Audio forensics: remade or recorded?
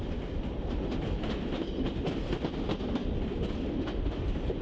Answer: recorded